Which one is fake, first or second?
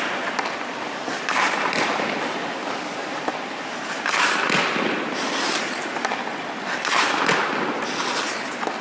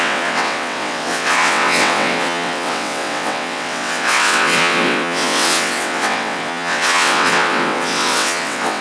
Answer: second